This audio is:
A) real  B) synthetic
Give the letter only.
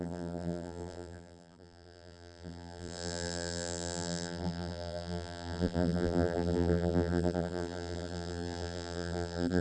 B